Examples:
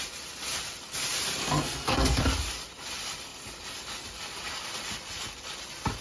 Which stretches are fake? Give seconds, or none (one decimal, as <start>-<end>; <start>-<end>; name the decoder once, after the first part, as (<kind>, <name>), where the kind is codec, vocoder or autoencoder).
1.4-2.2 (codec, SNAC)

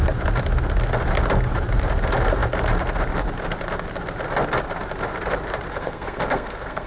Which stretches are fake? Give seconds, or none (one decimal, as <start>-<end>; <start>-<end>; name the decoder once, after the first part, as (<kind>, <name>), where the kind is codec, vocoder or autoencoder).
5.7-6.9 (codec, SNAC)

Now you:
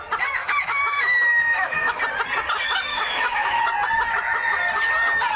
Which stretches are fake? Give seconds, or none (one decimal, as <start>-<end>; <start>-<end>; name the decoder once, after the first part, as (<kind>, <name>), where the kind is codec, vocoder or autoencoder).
0.4-2.0 (autoencoder, DAC-VAE); 2.9-3.6

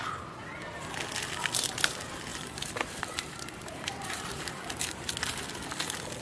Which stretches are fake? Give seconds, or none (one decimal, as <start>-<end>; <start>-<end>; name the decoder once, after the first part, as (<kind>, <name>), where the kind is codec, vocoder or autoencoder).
2.3-5.1 (vocoder, BigVGAN v2)

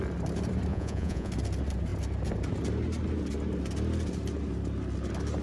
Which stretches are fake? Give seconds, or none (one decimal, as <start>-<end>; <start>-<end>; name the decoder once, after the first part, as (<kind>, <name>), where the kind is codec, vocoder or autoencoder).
0.7-1.3 (vocoder, Vocos)

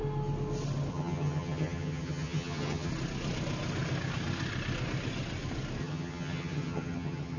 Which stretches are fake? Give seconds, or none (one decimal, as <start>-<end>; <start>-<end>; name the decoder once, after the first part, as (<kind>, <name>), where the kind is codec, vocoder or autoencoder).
0.9-2.9 (vocoder, HiFi-GAN); 5.8-7.4

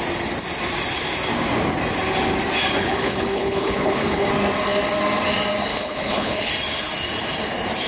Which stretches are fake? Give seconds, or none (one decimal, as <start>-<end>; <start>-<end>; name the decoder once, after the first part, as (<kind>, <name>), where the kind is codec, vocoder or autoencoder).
2.8-4.3 (codec, HILCodec); 5.7-6.5